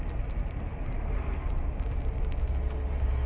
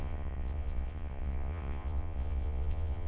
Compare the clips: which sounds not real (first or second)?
second